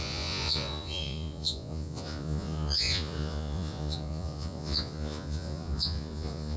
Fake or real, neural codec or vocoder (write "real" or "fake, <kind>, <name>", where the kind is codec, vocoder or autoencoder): fake, vocoder, Vocos